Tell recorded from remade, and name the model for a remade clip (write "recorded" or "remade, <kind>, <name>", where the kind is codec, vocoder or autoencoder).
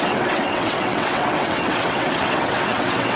remade, vocoder, WaveNeXt